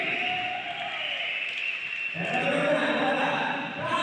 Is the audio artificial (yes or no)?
no